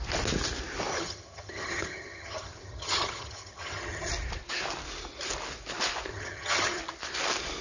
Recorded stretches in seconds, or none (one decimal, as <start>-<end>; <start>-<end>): 0.0-0.9; 4.1-6.1; 6.8-7.6